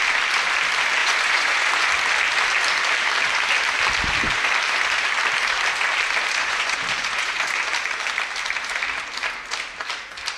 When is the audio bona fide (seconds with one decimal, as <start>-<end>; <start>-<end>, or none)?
0.0-1.0; 1.9-6.4; 7.6-10.4